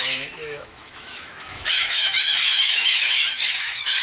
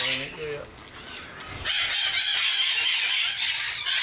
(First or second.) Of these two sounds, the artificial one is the first